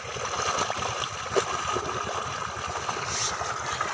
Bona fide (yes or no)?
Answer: yes